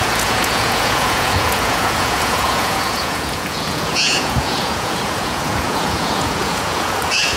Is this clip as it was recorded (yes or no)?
no